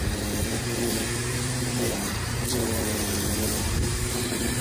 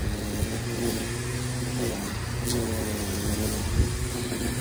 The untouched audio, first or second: second